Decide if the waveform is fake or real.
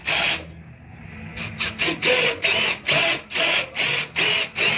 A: real